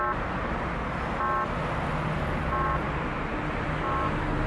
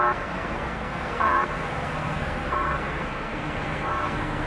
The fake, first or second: second